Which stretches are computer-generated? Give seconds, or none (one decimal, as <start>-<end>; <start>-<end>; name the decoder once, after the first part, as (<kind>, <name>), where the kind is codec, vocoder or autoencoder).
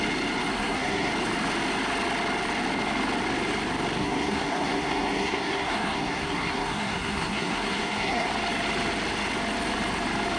0.5-1.1 (codec, SNAC); 4.0-8.3